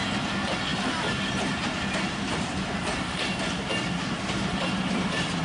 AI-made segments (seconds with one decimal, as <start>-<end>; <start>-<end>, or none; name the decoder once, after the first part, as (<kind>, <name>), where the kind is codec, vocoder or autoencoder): 0.7-3.6 (vocoder, BigVGAN v2); 4.5-5.4